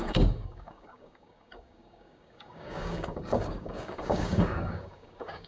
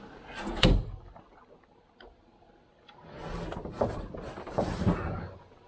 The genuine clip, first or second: second